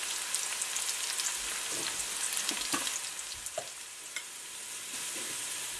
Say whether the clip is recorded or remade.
recorded